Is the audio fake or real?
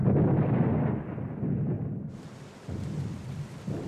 real